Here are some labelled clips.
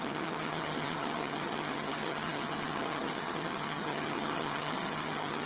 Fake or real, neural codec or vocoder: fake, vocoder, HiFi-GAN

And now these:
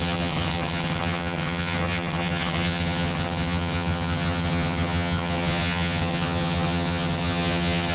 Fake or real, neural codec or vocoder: fake, vocoder, HiFi-GAN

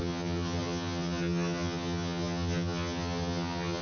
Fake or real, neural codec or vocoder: fake, vocoder, HiFi-GAN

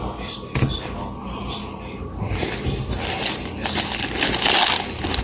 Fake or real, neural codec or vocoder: real